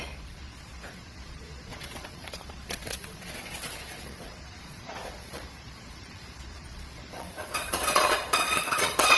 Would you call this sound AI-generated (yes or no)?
yes